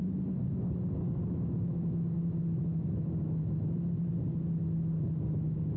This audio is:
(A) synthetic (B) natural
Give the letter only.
B